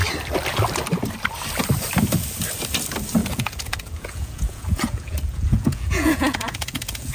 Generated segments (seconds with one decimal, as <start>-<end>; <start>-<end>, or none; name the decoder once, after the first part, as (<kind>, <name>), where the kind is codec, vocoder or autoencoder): 3.2-7.1 (vocoder, Vocos)